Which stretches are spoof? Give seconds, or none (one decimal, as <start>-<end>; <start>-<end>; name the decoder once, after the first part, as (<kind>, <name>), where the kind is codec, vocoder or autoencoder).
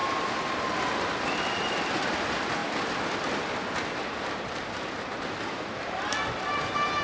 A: none